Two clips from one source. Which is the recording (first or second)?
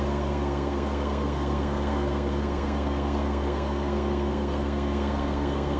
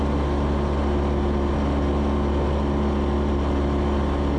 second